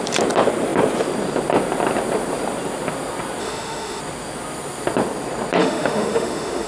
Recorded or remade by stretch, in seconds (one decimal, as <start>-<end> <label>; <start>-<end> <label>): 0.0-3.4 recorded; 3.4-4.0 remade; 4.0-5.6 recorded; 5.6-6.7 remade